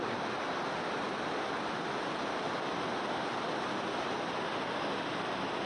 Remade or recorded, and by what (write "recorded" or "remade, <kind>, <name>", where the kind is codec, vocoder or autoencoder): recorded